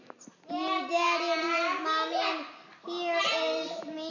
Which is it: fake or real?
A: real